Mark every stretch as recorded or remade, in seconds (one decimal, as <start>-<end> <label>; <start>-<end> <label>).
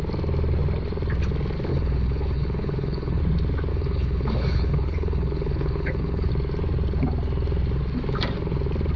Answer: 0.0-1.7 recorded; 1.7-3.2 remade; 3.2-3.7 recorded; 3.7-6.3 remade; 6.3-9.0 recorded